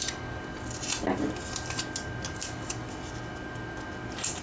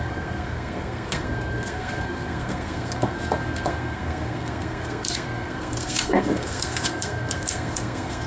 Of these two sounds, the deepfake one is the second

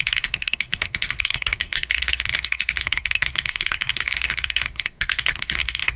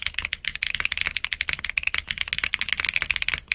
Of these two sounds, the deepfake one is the first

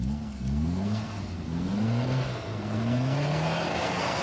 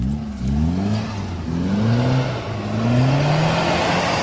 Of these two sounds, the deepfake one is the first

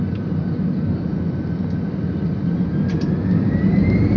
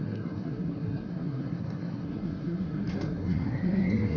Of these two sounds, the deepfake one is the second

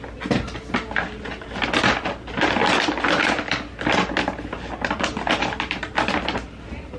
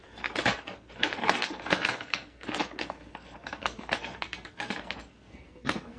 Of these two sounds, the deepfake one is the second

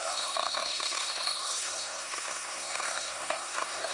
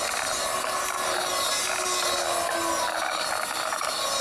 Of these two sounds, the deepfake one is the first